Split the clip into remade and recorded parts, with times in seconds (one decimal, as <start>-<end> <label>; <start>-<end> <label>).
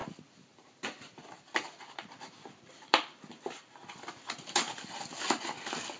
0.0-3.6 remade; 3.6-6.0 recorded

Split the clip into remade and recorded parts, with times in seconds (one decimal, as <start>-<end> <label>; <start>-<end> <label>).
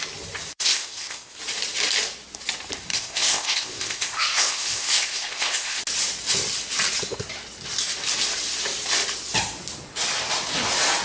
0.0-0.5 recorded; 0.5-1.4 remade; 1.4-2.9 recorded; 2.9-5.8 remade; 5.8-11.0 recorded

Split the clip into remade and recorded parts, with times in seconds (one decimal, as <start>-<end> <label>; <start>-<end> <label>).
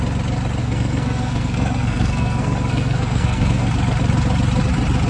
0.0-0.6 recorded; 0.6-3.7 remade; 3.7-5.1 recorded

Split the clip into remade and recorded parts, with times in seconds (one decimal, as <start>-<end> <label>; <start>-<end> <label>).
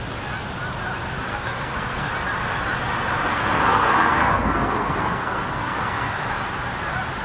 0.0-1.3 recorded; 1.3-2.1 remade; 2.1-3.3 recorded; 3.3-6.2 remade; 6.2-7.2 recorded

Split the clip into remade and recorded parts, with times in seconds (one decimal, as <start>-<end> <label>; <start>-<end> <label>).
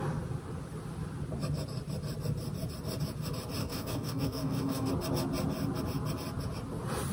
0.0-3.6 recorded; 3.6-4.9 remade; 4.9-7.1 recorded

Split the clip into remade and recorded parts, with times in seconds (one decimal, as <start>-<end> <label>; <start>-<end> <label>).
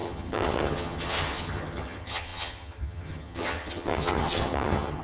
0.0-5.0 remade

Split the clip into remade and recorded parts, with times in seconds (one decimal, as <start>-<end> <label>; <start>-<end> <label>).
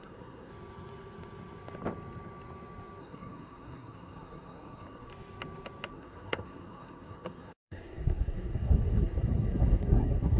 0.0-0.5 remade; 0.5-3.0 recorded; 3.0-5.1 remade; 5.1-5.9 recorded; 5.9-10.4 remade